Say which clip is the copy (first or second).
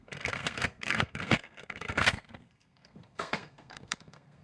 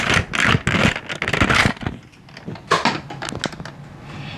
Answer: first